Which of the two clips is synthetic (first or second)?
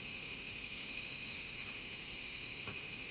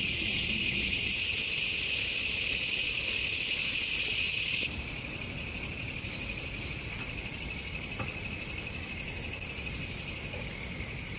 first